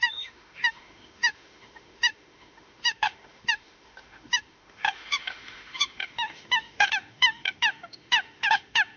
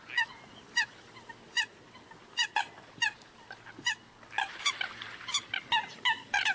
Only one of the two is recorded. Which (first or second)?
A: second